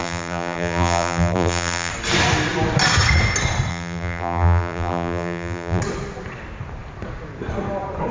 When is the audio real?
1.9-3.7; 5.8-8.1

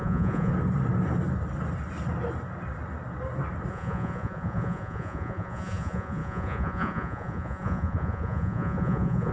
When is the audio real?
0.5-3.7

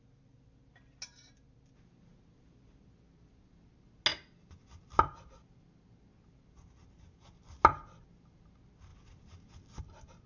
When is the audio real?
0.0-10.3

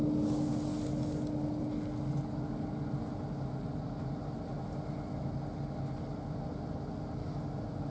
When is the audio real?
0.0-7.9

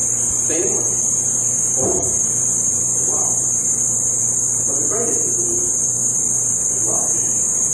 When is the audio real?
4.6-6.0

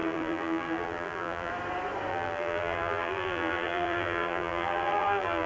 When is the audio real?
1.5-2.1

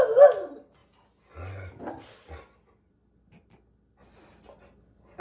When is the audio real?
0.0-5.2

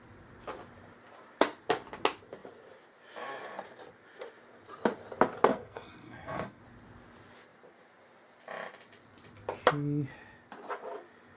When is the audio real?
0.0-5.5; 6.6-11.4